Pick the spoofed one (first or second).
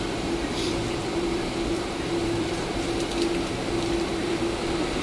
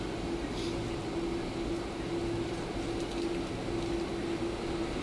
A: first